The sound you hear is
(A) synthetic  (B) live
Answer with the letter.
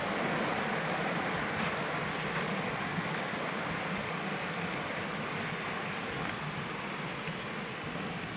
B